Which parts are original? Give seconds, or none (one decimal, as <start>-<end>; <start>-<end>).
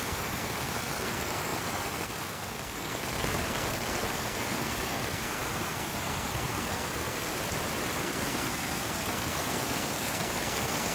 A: 7.3-8.0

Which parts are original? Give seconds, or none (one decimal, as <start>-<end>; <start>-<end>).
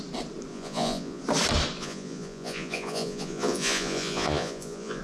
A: 0.0-0.5; 1.2-1.8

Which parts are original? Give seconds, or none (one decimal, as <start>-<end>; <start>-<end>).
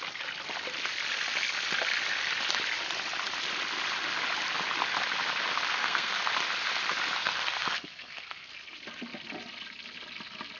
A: 0.0-5.8; 6.3-7.2; 8.5-10.6